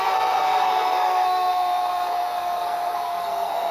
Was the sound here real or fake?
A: fake